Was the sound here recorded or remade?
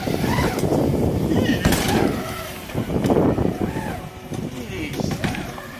recorded